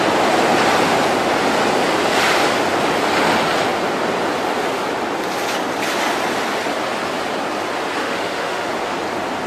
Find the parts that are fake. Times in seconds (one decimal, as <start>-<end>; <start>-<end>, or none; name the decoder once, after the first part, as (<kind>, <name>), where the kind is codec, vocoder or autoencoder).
8.0-8.7 (autoencoder, DAC-VAE)